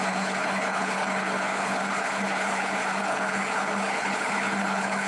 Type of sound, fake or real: fake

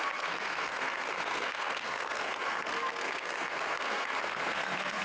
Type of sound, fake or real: fake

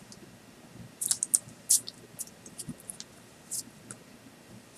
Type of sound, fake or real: real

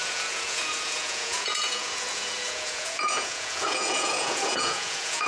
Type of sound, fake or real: fake